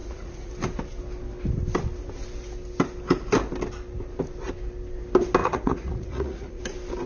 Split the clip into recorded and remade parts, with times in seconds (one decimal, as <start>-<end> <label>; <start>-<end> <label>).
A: 0.0-0.5 remade; 0.5-5.4 recorded; 5.4-6.6 remade; 6.6-7.1 recorded